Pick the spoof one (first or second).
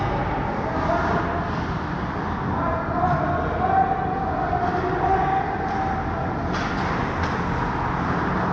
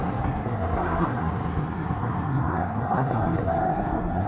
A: second